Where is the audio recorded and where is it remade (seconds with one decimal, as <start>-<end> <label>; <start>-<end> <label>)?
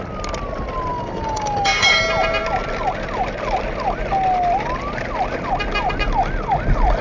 0.0-0.9 recorded; 0.9-2.0 remade; 2.0-7.0 recorded